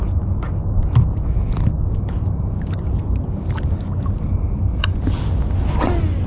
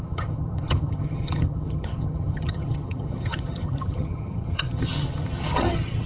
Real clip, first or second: first